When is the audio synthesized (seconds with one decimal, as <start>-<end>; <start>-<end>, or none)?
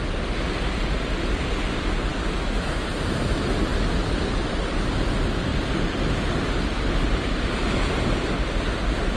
5.5-8.4